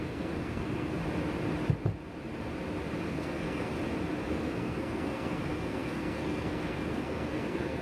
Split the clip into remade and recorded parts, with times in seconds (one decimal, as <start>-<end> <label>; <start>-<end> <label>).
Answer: 0.0-1.0 remade; 1.0-3.1 recorded; 3.1-3.7 remade; 3.7-4.3 recorded; 4.3-7.8 remade